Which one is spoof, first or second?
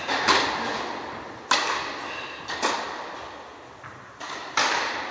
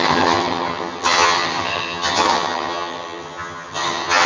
second